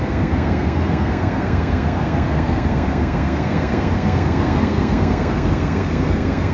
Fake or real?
fake